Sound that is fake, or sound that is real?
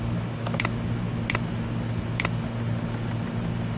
real